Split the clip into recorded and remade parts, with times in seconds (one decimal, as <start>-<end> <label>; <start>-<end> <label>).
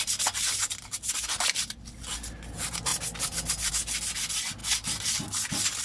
0.0-5.8 recorded